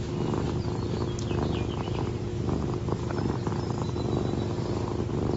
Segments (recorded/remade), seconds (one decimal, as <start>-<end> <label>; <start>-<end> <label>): 0.0-5.4 recorded